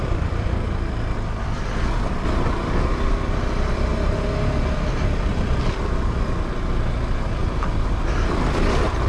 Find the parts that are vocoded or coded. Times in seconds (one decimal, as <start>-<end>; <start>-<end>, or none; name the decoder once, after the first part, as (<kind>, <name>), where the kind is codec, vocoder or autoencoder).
0.0-3.9 (vocoder, BigVGAN v2); 5.3-9.1